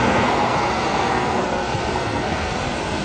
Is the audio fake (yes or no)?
yes